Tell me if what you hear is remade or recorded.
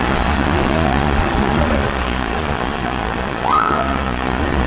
remade